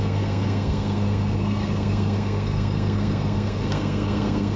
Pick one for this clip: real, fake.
fake